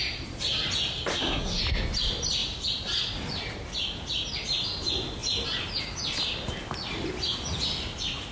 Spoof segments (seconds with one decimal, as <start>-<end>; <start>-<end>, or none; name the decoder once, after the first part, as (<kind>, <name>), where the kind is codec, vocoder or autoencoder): 1.1-1.6 (codec, SNAC)